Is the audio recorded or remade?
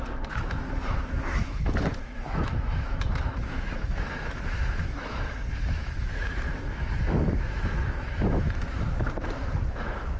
remade